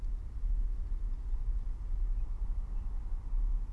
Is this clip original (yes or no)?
yes